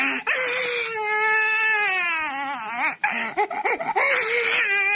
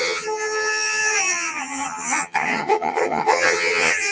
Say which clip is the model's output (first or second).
second